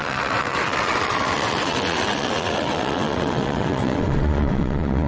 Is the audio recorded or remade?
remade